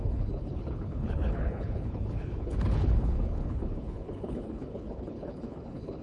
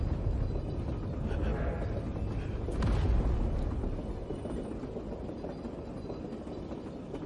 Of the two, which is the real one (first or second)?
second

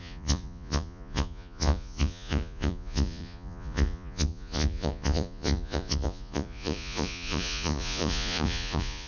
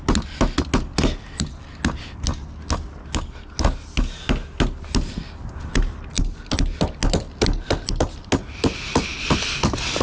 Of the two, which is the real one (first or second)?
second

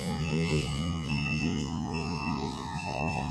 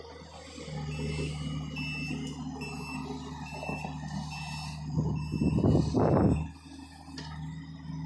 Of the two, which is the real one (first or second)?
second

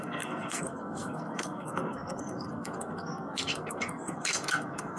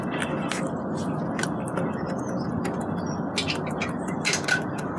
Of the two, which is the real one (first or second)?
second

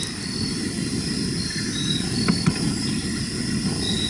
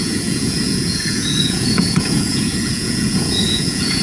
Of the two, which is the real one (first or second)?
first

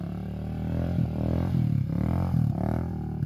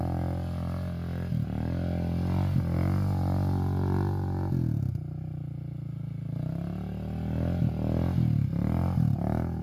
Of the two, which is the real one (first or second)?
second